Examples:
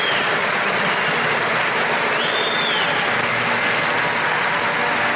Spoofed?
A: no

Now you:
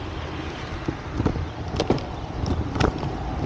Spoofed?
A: no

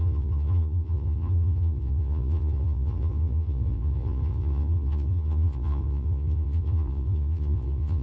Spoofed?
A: yes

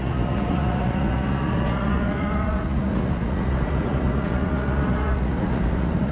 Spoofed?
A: yes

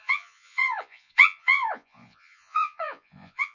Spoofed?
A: yes